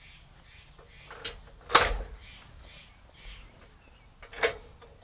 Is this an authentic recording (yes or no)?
yes